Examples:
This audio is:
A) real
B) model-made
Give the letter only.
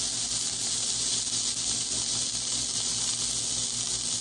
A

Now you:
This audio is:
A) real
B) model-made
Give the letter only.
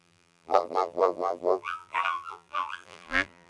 B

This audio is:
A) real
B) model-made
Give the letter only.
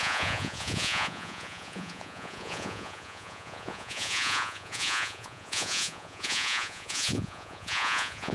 B